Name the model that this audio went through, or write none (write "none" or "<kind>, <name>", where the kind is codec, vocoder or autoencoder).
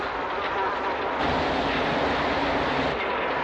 none